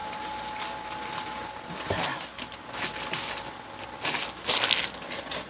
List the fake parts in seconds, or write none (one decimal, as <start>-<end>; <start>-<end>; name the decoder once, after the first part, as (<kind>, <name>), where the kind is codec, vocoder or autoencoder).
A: none